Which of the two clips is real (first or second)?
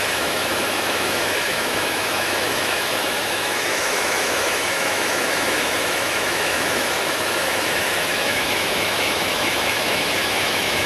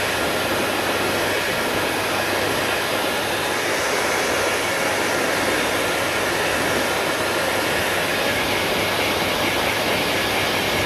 second